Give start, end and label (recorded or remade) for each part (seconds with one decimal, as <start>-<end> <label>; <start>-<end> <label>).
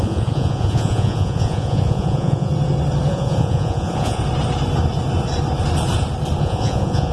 0.0-2.5 remade; 2.5-3.1 recorded; 3.1-4.2 remade; 4.2-6.4 recorded; 6.4-7.1 remade